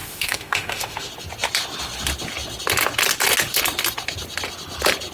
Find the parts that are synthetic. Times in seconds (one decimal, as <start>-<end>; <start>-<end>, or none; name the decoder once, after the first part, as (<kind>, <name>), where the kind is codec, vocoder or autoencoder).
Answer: 0.0-1.1 (autoencoder, DAC-VAE)